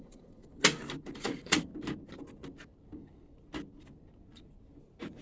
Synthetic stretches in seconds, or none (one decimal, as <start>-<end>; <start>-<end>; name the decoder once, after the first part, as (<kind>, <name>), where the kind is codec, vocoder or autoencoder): 0.0-0.4 (vocoder, Vocos); 1.2-1.7; 4.8-5.2